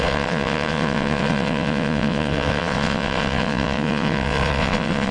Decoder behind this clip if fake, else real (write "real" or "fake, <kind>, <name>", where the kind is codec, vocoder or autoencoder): fake, vocoder, WaveNeXt